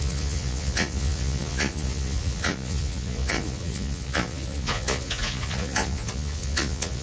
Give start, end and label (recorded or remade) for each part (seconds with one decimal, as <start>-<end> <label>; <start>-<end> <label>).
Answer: 0.0-7.0 remade